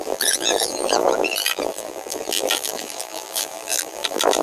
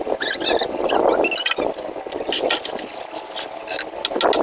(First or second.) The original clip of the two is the second